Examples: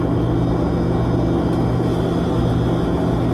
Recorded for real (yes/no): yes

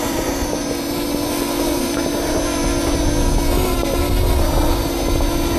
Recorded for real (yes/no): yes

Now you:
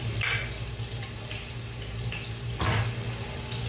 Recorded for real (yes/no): yes